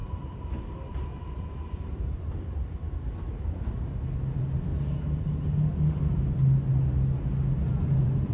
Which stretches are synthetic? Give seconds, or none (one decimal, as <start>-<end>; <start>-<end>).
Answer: 0.0-3.3; 3.9-4.7; 7.7-8.3

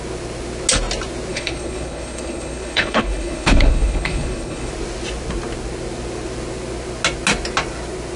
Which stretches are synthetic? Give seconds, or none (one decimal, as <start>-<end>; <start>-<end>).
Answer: 1.3-4.7

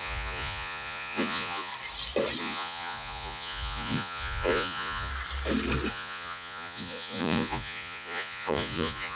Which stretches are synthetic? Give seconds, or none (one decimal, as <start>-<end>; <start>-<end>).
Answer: 0.0-1.7; 2.4-5.1; 5.9-9.2

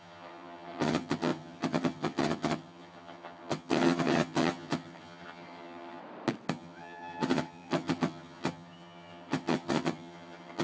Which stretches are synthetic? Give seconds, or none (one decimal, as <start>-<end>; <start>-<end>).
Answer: 0.0-6.0; 6.5-10.6

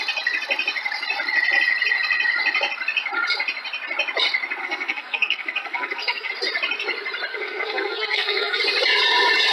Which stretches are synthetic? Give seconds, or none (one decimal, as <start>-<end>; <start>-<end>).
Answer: 4.6-6.3; 7.3-8.6